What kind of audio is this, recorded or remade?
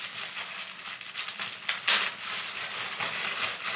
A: recorded